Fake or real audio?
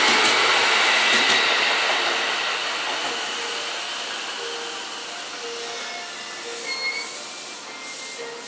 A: real